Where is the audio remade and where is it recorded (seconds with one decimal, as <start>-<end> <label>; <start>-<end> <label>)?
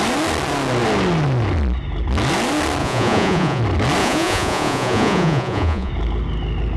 0.0-2.8 recorded; 2.8-3.6 remade; 3.6-4.0 recorded; 4.0-5.9 remade; 5.9-6.8 recorded